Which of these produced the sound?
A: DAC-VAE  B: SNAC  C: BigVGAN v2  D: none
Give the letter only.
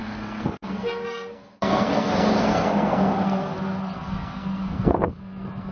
B